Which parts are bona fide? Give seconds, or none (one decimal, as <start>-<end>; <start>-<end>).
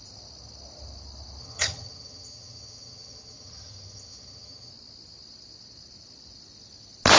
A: 0.0-1.4; 4.7-7.2